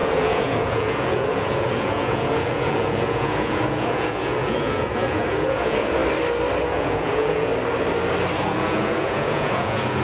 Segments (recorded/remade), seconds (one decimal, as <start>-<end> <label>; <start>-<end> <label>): 0.0-6.0 remade; 6.0-6.6 recorded; 6.6-7.5 remade; 7.5-8.4 recorded; 8.4-10.0 remade